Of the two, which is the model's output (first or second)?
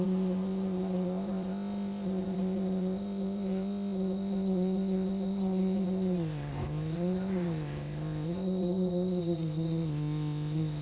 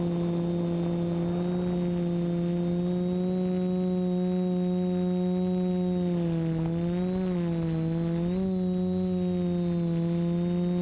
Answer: first